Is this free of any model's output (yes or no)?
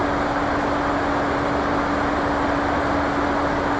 yes